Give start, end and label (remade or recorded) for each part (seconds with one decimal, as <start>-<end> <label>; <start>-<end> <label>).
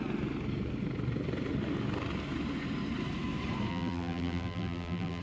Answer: 0.0-3.7 recorded; 3.7-5.2 remade